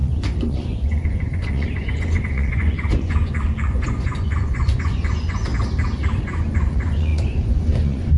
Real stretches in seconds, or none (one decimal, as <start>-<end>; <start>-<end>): 5.5-6.2